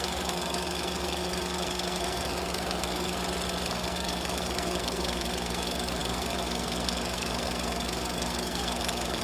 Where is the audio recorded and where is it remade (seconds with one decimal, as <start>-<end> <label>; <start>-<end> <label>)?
0.0-3.2 remade; 3.2-3.7 recorded; 3.7-9.2 remade